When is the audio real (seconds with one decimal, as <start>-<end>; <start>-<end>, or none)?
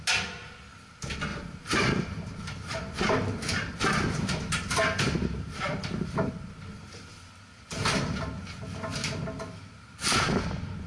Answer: 0.0-1.3; 6.3-9.0; 10.0-10.9